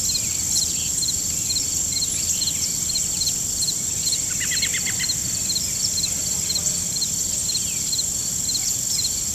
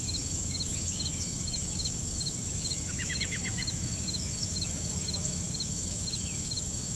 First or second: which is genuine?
first